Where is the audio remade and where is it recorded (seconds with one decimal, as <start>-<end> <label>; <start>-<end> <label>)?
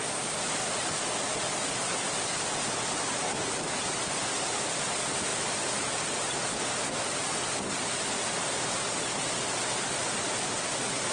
0.0-11.1 recorded